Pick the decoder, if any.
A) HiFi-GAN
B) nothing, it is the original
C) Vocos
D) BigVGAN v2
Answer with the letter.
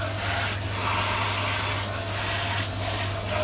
B